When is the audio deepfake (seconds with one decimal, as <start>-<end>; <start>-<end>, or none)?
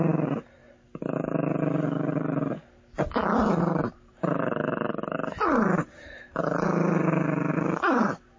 0.0-0.6; 3.6-4.6; 6.0-8.4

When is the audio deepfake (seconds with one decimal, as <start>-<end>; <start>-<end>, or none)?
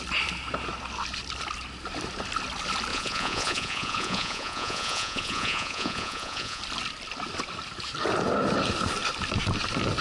2.9-6.6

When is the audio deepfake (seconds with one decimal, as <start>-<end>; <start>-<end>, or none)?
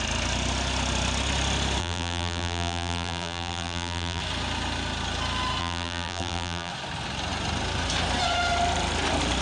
1.8-4.2; 5.6-6.7